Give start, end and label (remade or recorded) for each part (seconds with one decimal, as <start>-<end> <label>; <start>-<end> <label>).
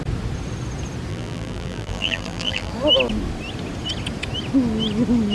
0.0-1.1 recorded; 1.1-2.7 remade; 2.7-5.3 recorded